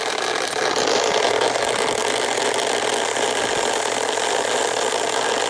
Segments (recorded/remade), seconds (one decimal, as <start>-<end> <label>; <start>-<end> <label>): 0.0-5.5 recorded